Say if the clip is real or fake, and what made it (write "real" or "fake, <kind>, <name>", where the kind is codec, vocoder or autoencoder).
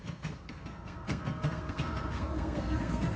fake, codec, SNAC